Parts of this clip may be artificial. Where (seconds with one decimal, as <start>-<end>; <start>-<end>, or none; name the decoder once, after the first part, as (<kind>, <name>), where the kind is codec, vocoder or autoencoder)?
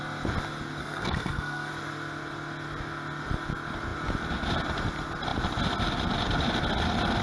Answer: 0.8-1.7 (codec, SNAC)